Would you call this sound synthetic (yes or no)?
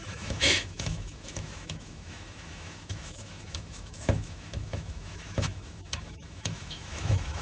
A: yes